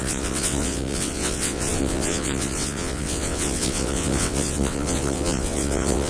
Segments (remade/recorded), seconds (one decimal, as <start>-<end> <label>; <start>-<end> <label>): 0.0-6.1 remade